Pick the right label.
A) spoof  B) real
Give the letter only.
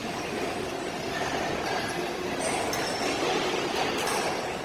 B